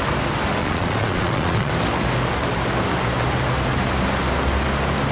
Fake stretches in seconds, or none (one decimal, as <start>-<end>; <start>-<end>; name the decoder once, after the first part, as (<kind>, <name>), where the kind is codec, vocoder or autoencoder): 0.6-1.7 (vocoder, Vocos)